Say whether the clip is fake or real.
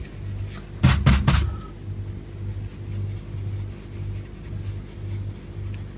real